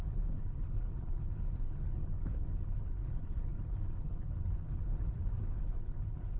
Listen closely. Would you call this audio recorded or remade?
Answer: remade